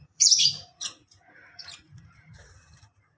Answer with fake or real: fake